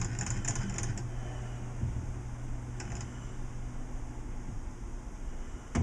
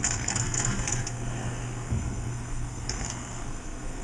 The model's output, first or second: second